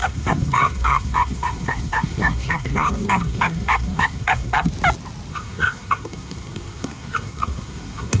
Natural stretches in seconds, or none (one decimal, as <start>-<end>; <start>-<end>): 4.7-5.3